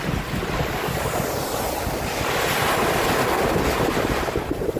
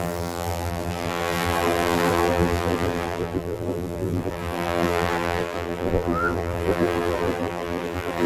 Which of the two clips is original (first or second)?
first